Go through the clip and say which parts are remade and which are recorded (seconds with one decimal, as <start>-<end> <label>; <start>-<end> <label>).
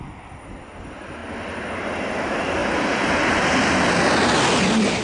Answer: 0.0-1.2 recorded; 1.2-1.8 remade; 1.8-5.0 recorded